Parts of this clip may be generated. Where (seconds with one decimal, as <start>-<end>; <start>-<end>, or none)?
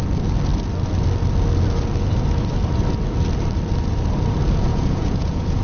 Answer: 4.7-5.6